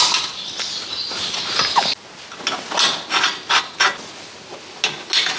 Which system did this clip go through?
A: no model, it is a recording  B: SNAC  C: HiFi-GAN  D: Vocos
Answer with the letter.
A